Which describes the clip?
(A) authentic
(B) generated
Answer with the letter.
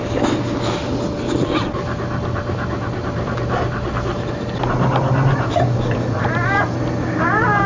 A